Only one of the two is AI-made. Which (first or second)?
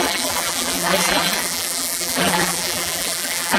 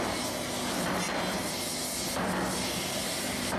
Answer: first